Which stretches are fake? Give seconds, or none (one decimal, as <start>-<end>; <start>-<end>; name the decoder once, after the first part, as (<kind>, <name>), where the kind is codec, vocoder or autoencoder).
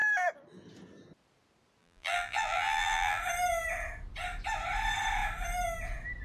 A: 1.8-3.2 (vocoder, BigVGAN v2)